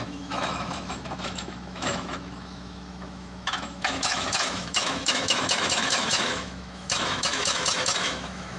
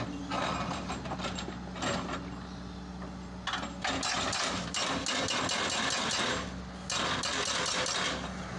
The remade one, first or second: first